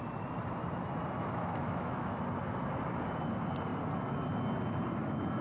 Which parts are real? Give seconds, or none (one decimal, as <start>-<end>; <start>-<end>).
0.0-1.3; 2.2-5.4